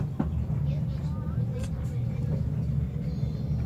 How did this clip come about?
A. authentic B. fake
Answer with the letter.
A